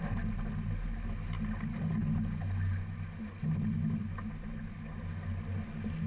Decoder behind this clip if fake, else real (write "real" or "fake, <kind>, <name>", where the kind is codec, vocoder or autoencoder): real